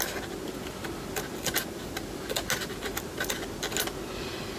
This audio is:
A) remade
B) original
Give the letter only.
B